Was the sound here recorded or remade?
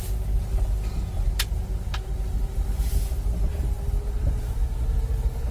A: recorded